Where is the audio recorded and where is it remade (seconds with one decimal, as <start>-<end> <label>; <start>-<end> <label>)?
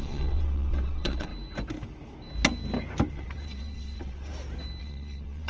0.0-1.3 remade; 1.3-3.1 recorded; 3.1-4.3 remade; 4.3-4.8 recorded; 4.8-5.5 remade